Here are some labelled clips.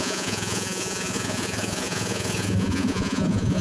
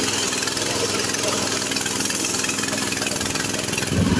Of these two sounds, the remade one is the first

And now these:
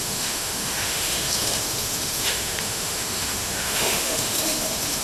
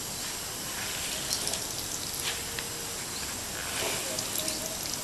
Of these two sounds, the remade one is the first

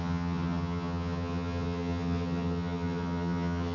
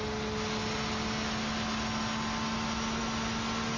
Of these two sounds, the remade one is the first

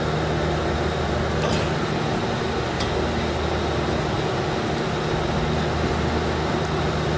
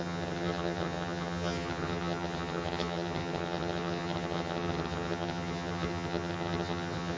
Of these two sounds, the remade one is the second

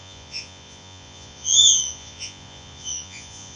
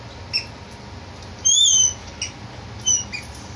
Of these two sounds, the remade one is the first